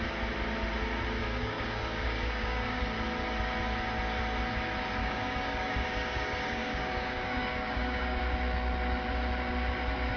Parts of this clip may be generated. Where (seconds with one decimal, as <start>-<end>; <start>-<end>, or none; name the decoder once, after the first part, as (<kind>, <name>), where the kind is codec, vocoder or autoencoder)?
1.2-2.8 (codec, DAC); 5.0-8.2